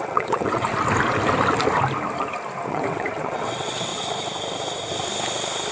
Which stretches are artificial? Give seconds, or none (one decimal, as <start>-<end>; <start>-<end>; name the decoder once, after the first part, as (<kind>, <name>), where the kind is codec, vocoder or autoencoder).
0.0-0.7 (vocoder, WaveNeXt); 2.7-3.9